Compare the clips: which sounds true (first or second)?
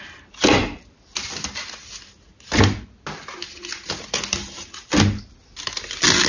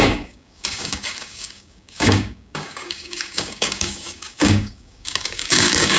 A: first